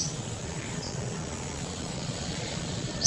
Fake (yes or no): yes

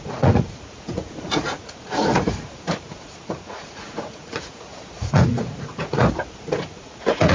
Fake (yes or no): yes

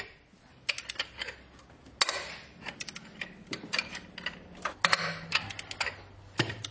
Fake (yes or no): no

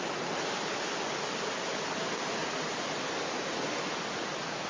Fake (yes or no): no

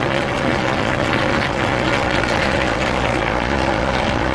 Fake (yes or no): yes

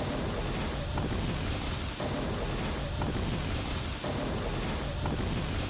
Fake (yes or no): no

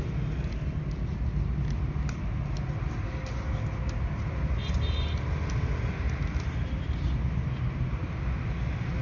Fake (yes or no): no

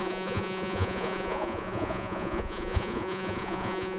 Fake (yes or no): yes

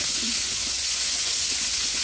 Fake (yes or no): yes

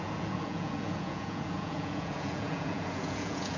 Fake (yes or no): yes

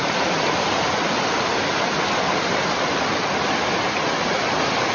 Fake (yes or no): no